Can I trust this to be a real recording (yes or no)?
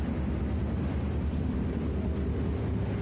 yes